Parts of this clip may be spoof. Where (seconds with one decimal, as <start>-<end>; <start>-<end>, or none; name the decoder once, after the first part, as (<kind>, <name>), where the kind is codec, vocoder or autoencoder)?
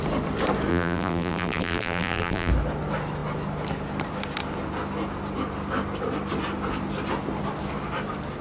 0.7-2.5 (vocoder, BigVGAN v2)